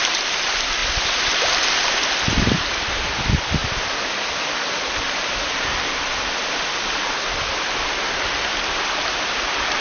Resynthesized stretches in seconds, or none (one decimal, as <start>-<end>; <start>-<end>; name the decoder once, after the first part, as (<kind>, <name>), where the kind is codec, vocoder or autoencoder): 0.0-3.6 (vocoder, BigVGAN v2); 4.7-9.8